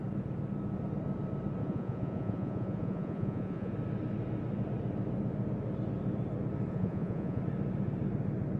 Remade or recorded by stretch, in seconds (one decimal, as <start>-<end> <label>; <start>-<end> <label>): 0.0-1.6 recorded; 1.6-3.7 remade; 3.7-6.7 recorded; 6.7-7.4 remade; 7.4-8.6 recorded